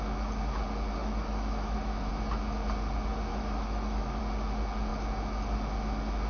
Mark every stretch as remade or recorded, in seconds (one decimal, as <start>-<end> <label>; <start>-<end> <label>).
0.0-1.0 recorded; 1.0-2.1 remade; 2.1-3.3 recorded; 3.3-4.2 remade; 4.2-6.3 recorded